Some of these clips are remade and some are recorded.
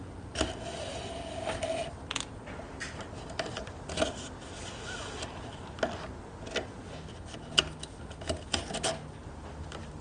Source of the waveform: recorded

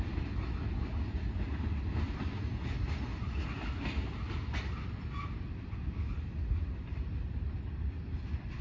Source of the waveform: recorded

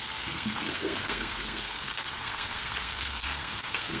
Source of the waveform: remade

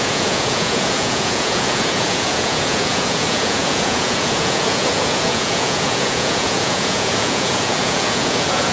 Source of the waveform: remade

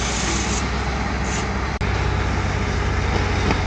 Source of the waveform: recorded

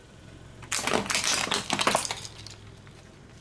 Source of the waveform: recorded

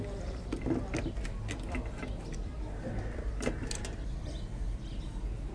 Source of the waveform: recorded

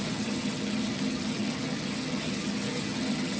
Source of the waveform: remade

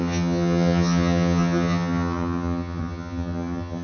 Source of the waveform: remade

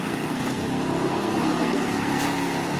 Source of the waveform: remade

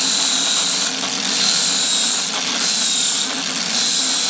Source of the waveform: recorded